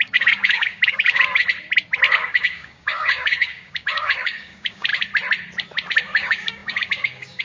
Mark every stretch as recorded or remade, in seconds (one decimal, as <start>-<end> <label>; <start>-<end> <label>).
0.0-1.4 remade; 1.4-2.1 recorded; 2.1-4.9 remade; 4.9-6.0 recorded; 6.0-7.4 remade